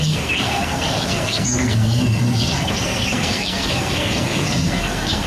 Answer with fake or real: fake